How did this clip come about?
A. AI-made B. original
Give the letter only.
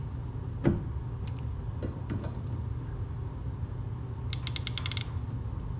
B